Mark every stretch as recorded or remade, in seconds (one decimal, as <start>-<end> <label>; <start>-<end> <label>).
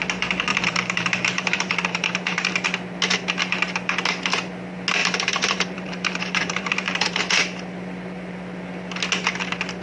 0.0-0.5 recorded; 0.5-2.5 remade; 2.5-5.0 recorded; 5.0-7.2 remade; 7.2-9.8 recorded